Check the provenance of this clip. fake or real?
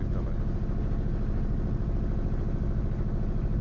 real